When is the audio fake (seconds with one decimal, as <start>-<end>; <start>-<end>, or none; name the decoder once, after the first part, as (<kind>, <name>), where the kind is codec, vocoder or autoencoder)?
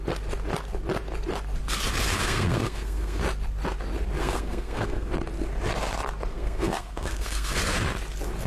2.2-3.2 (codec, SNAC); 4.2-5.1; 6.3-7.6